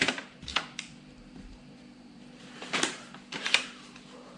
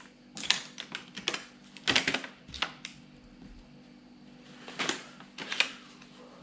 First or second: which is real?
second